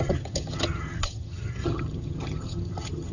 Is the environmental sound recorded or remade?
remade